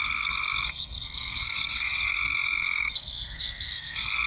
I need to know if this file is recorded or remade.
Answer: remade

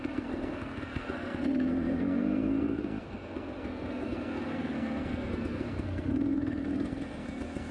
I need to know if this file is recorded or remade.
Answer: remade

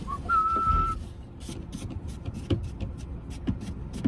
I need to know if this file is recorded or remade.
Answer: recorded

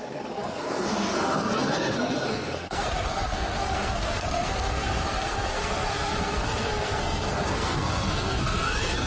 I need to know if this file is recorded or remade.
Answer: remade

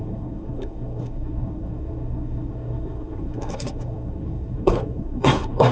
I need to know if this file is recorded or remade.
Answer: remade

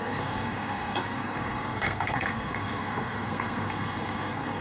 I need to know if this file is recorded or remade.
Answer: remade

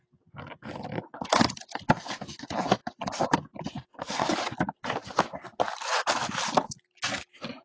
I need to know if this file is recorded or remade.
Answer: recorded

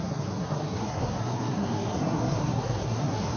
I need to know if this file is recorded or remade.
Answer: remade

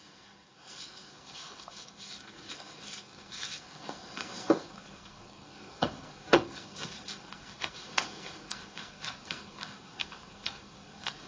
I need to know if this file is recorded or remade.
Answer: remade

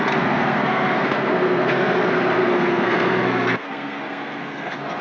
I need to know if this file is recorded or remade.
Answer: remade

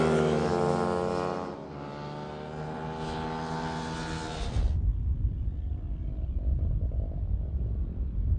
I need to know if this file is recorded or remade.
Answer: recorded